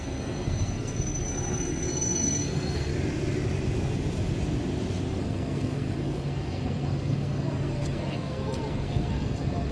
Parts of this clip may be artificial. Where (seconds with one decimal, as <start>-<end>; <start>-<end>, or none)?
0.0-2.9; 5.1-9.7